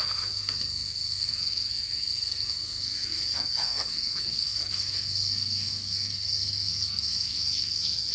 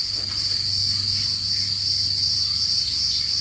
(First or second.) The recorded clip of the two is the second